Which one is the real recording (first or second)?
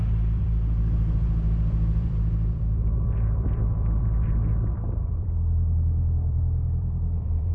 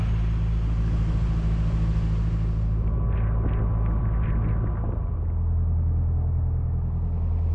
second